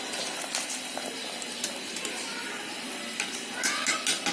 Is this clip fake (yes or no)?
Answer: no